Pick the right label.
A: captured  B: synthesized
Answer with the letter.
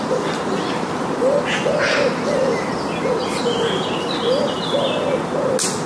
A